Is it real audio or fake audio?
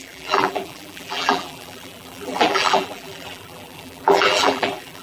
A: fake